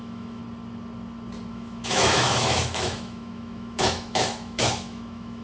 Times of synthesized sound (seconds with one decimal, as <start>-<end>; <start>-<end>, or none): 0.0-0.4; 1.5-5.4